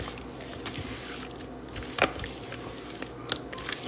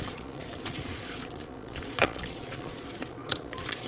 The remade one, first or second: second